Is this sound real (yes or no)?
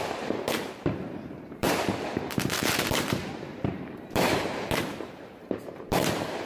no